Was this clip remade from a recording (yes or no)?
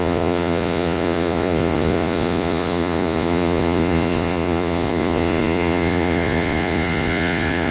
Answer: yes